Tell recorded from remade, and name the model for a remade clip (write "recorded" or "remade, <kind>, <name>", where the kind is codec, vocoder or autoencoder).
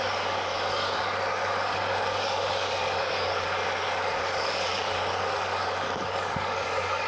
remade, codec, DAC